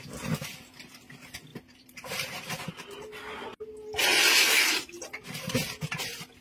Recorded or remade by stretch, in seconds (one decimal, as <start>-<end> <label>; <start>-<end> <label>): 0.0-1.5 recorded; 1.5-2.4 remade; 2.4-6.4 recorded